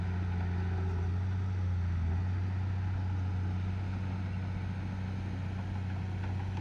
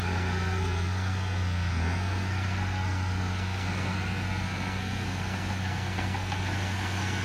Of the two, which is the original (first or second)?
first